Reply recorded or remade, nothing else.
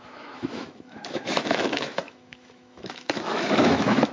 remade